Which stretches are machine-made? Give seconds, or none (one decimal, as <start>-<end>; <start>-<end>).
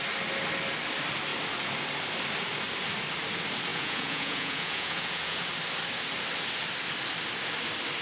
3.7-5.4